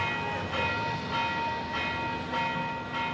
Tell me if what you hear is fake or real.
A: real